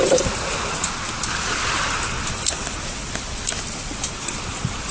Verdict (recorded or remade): recorded